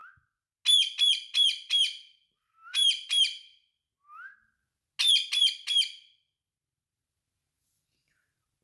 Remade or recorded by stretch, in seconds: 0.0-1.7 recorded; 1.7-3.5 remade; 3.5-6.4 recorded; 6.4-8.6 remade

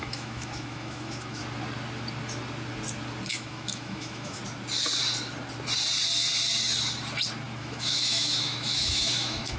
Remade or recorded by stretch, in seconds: 0.0-1.4 remade; 1.4-3.3 recorded; 3.3-4.4 remade; 4.4-7.6 recorded; 7.6-9.6 remade

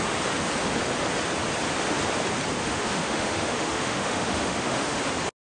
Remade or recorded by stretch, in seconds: 0.0-2.6 recorded; 2.6-5.0 remade; 5.0-5.4 recorded

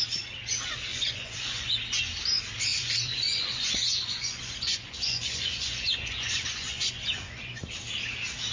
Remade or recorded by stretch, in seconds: 0.0-0.9 recorded; 0.9-1.7 remade; 1.7-2.7 recorded; 2.7-7.6 remade; 7.6-8.5 recorded

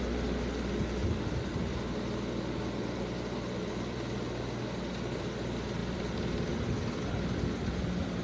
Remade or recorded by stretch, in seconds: 0.0-5.8 recorded; 5.8-7.1 remade; 7.1-8.2 recorded